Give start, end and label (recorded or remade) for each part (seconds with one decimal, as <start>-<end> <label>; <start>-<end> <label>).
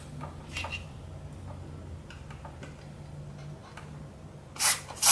0.0-5.1 recorded